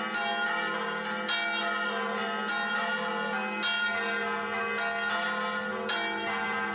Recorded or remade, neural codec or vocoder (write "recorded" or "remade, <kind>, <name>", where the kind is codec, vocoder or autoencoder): recorded